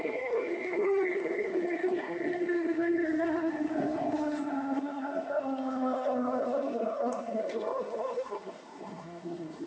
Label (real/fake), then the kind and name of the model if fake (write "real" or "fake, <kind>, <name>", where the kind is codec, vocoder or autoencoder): fake, codec, SNAC